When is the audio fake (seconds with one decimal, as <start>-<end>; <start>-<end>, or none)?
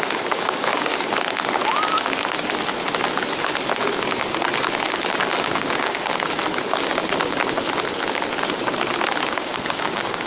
0.0-0.9; 5.4-6.1; 9.3-10.3